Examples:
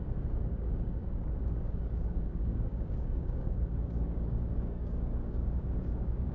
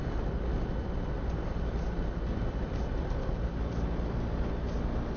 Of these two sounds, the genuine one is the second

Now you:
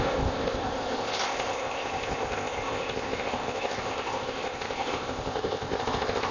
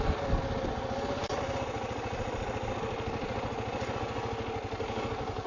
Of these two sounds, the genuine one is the second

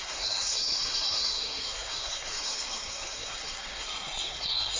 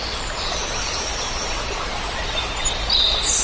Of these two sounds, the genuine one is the second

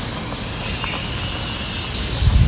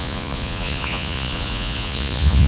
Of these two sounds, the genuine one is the first